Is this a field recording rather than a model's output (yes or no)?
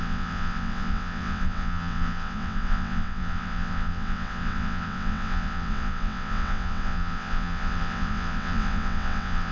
no